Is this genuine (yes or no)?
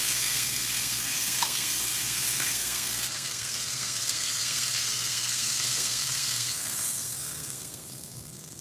no